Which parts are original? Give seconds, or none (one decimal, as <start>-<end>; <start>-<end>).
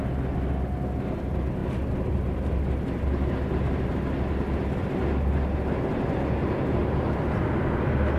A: 0.0-8.2